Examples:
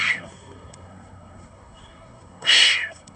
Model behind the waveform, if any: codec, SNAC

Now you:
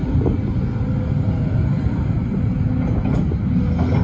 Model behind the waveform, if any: none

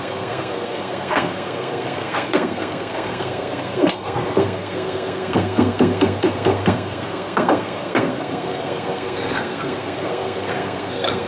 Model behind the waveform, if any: codec, SNAC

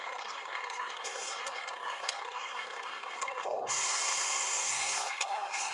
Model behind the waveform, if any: codec, SNAC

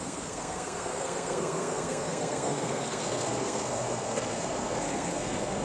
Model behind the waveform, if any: codec, SNAC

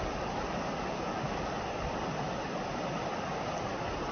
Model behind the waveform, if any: none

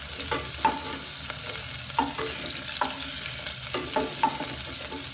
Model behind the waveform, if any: none